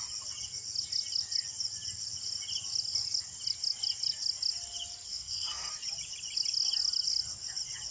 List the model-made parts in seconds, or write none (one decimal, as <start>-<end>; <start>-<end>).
5.1-5.7